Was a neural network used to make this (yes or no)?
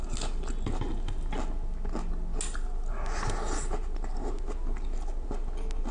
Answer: no